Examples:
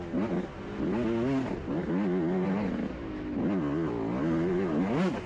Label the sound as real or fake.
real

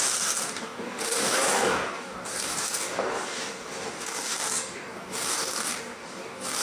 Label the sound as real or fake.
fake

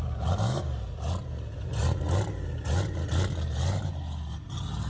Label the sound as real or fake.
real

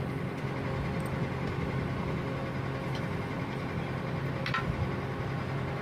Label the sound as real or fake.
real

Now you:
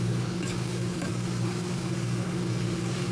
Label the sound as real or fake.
fake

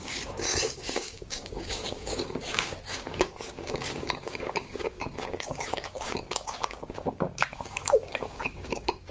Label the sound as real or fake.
fake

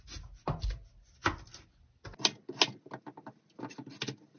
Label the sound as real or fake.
real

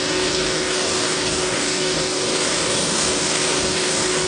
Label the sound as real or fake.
fake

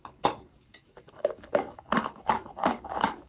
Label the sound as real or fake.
fake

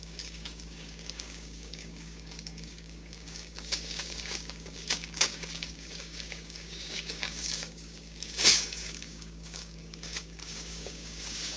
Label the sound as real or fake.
fake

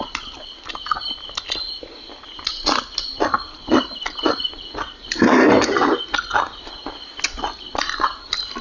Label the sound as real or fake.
real